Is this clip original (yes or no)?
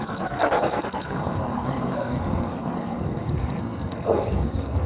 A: no